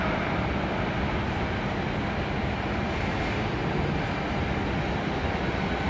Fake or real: real